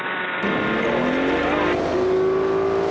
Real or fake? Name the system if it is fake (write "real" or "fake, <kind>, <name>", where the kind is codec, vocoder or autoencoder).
real